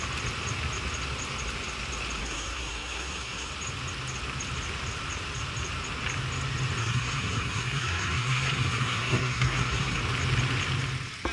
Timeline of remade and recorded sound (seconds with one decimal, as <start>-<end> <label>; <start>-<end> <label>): 0.0-2.2 recorded; 2.2-3.5 remade; 3.5-6.8 recorded; 6.8-10.0 remade; 10.0-11.3 recorded